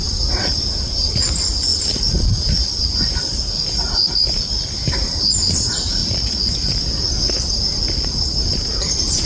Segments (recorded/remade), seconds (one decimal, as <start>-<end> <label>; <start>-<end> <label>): 0.0-6.0 remade; 6.0-7.5 recorded; 7.5-9.3 remade